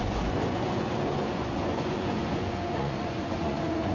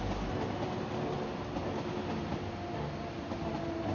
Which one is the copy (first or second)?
first